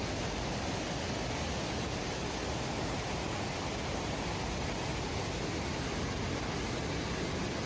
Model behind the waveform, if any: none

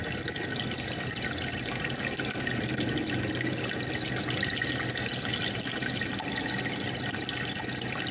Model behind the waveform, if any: none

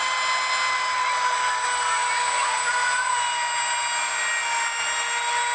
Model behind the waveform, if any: none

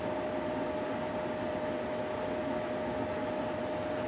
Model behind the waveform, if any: none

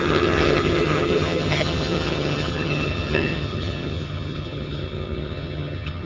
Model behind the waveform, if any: vocoder, HiFi-GAN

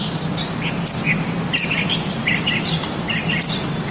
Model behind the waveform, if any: none